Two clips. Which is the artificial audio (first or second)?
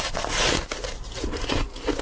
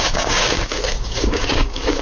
second